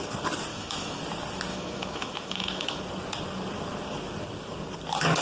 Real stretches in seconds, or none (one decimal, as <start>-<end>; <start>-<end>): 0.0-0.5; 1.0-1.5; 2.8-5.2